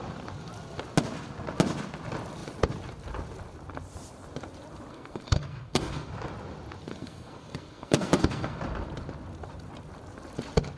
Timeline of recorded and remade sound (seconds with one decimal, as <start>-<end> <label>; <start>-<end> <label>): 0.0-4.9 recorded; 4.9-6.1 remade; 6.1-6.9 recorded; 6.9-8.6 remade; 8.6-10.8 recorded